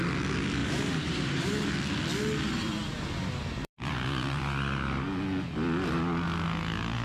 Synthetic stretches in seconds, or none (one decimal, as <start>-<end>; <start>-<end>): 0.6-1.7; 3.6-4.4